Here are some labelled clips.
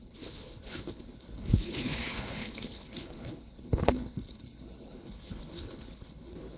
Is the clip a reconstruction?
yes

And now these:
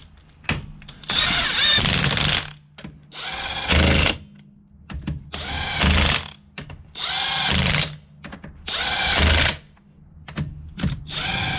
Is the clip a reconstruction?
no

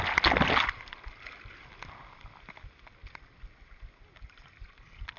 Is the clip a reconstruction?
no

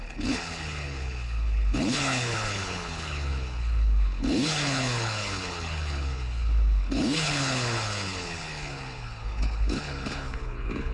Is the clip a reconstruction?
yes